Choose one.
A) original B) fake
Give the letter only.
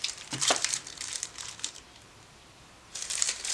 B